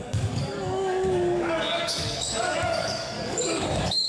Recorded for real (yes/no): no